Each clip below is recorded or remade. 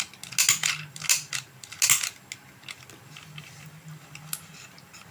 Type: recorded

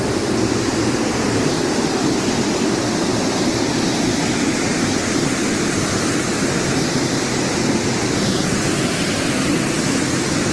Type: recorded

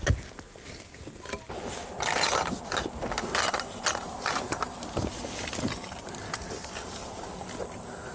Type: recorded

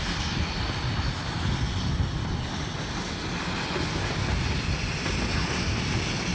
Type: recorded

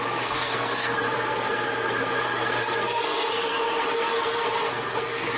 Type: remade